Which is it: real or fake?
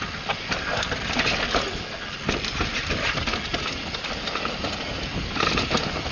real